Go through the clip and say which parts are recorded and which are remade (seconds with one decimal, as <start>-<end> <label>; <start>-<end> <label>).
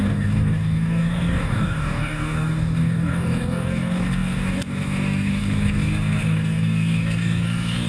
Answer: 0.0-7.9 remade